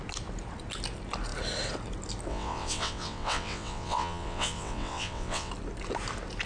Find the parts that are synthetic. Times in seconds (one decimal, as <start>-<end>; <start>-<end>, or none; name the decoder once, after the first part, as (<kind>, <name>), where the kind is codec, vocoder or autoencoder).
2.3-5.5 (vocoder, WaveNeXt)